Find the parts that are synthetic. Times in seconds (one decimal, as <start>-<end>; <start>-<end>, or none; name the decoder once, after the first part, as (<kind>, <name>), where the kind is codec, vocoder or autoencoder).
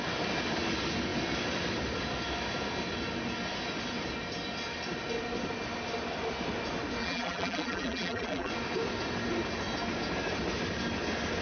7.0-8.5 (vocoder, BigVGAN v2)